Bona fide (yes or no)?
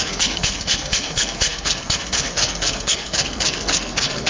no